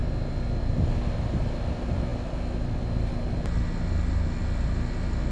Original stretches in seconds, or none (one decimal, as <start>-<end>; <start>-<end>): 0.0-5.3